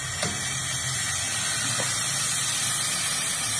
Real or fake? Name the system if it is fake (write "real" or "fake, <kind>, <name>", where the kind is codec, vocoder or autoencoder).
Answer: real